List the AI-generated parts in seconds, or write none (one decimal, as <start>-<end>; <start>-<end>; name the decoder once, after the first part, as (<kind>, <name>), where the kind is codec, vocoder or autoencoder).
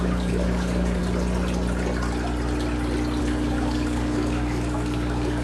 0.0-1.0 (codec, DAC); 3.2-5.4